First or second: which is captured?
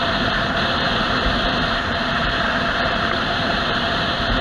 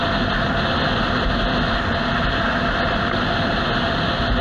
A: second